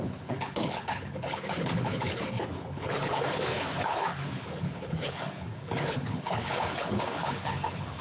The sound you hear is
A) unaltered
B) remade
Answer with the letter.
B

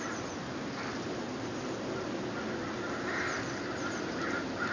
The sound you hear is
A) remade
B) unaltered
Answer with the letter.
B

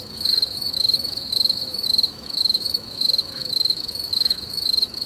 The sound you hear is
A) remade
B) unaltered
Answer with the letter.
A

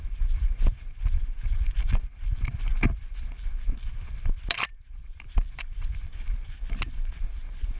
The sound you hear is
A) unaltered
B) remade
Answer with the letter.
A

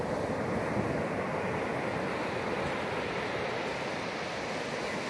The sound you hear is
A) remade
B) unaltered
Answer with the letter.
B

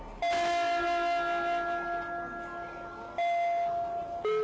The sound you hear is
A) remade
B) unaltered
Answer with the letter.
B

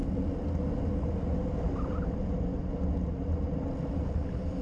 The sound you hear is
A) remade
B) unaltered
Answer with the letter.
B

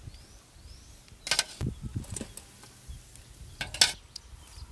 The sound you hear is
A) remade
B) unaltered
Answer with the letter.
B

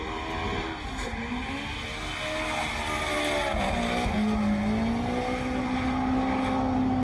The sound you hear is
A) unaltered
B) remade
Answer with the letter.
A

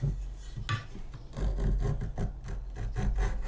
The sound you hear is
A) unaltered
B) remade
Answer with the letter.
A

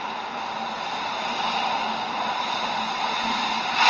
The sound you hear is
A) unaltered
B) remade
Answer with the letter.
B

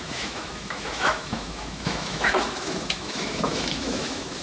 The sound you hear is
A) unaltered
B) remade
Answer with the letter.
B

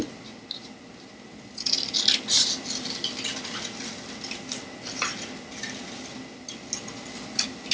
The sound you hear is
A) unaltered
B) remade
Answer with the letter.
A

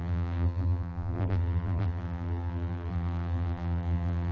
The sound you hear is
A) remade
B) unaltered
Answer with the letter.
A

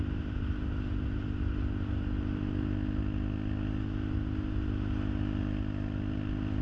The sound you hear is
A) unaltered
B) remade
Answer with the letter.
A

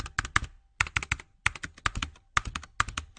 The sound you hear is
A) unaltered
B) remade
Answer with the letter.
A